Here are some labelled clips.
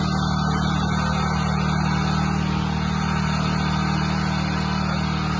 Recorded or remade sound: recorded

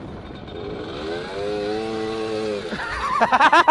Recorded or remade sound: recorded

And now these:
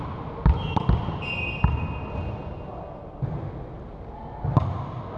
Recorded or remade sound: recorded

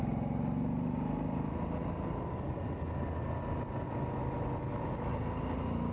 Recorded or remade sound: recorded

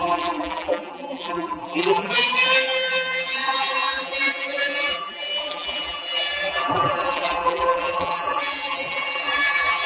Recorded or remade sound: remade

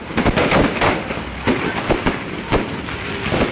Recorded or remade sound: remade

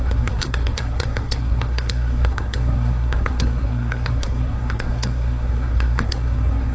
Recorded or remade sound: remade